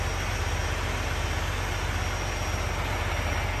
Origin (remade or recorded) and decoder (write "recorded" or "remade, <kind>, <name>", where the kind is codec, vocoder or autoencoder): recorded